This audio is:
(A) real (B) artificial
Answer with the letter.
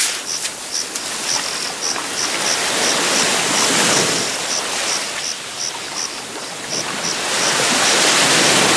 A